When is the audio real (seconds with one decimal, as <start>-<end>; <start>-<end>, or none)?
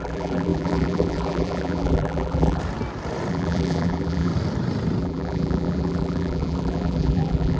2.6-3.3; 4.3-5.0